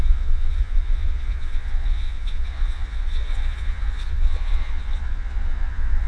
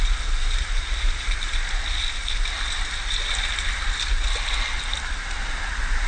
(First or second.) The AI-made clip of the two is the first